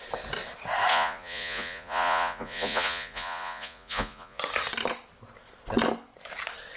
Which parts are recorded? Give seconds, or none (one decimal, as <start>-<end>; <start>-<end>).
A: 0.0-0.9; 4.4-6.8